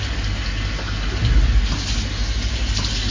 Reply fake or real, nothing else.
real